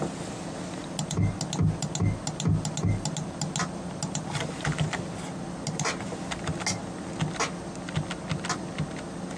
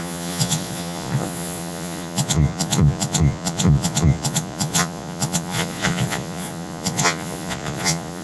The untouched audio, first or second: first